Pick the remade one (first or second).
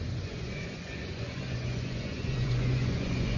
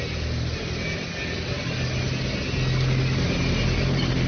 first